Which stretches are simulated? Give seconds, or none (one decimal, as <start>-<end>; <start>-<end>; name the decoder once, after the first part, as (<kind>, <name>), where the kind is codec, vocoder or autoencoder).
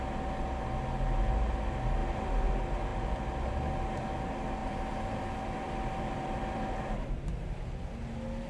2.0-2.5 (vocoder, BigVGAN v2); 4.6-7.6